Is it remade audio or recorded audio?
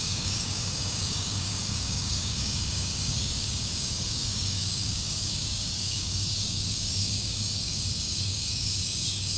remade